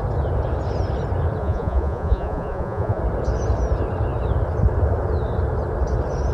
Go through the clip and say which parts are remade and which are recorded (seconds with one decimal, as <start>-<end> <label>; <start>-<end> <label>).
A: 0.0-1.4 recorded; 1.4-3.0 remade; 3.0-6.3 recorded